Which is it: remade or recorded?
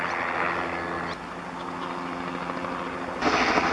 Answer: recorded